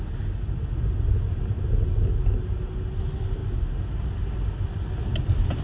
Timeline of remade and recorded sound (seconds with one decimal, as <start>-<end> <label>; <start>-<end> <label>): 0.0-5.6 recorded

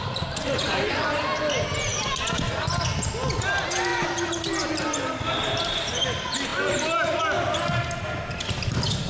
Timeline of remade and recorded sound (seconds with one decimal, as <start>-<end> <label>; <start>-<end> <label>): 0.0-9.1 recorded